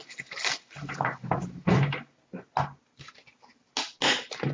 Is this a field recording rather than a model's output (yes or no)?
yes